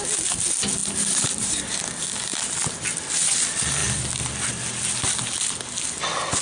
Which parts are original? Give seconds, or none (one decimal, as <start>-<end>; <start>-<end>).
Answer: 0.0-0.8; 1.8-6.4